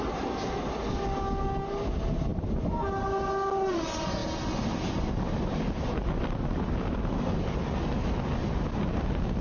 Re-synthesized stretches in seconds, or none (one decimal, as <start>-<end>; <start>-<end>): none